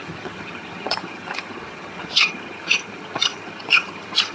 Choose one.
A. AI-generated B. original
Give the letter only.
A